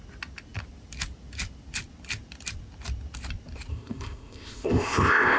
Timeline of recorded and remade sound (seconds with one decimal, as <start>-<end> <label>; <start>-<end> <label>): 0.0-3.7 recorded; 3.7-5.4 remade